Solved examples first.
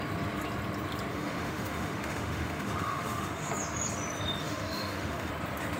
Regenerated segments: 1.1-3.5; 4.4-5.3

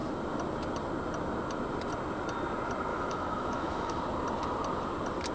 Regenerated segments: 2.9-4.0

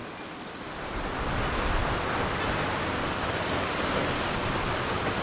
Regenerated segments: none

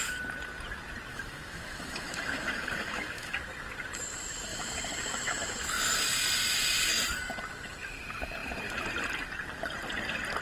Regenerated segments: 1.1-3.4; 4.5-5.8

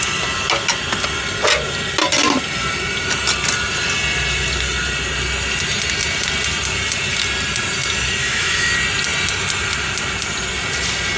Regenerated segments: 8.2-8.7

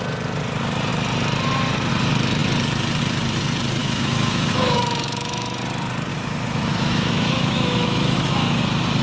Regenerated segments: 3.8-5.6; 6.1-8.6

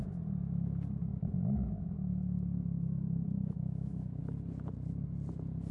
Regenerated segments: 1.1-4.2